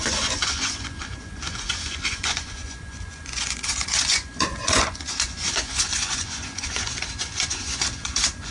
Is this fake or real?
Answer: fake